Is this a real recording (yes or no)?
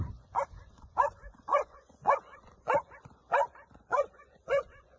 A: no